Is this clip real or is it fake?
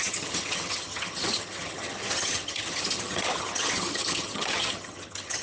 fake